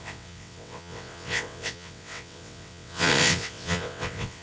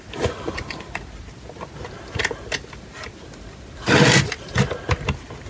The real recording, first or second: second